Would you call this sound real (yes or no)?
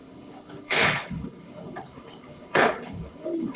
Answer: no